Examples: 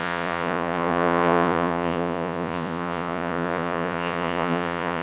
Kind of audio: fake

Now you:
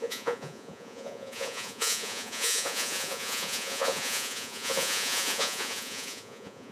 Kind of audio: fake